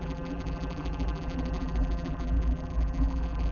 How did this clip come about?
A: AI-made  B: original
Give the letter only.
A